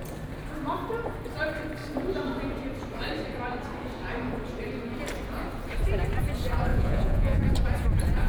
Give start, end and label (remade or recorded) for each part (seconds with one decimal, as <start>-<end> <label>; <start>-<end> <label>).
0.0-6.7 recorded; 6.7-7.4 remade; 7.4-8.3 recorded